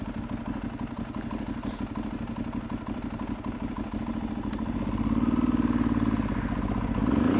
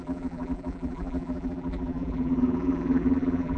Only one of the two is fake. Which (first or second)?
second